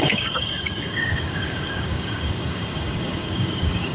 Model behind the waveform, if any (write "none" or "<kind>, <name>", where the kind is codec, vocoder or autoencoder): codec, DAC